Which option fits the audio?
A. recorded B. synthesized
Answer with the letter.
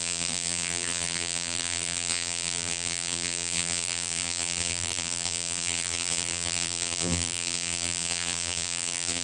B